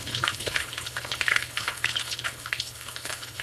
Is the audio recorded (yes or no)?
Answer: no